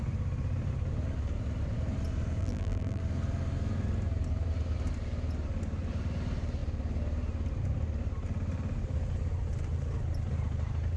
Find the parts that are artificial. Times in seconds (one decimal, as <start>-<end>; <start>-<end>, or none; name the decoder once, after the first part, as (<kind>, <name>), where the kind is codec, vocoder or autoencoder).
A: 2.4-3.0 (vocoder, BigVGAN v2)